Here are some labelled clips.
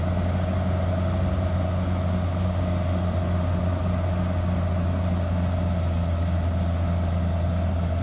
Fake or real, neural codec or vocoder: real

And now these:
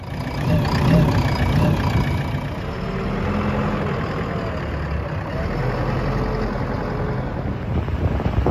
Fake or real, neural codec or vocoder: real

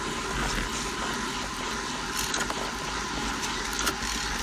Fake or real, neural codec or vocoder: real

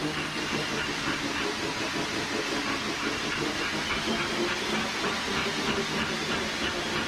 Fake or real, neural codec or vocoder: real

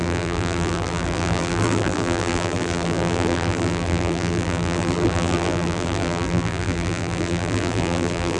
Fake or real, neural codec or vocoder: fake, vocoder, BigVGAN v2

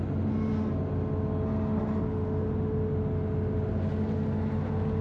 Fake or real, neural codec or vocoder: real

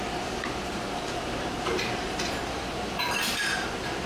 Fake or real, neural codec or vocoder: fake, vocoder, BigVGAN v2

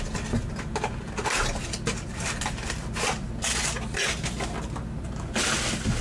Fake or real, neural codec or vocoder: real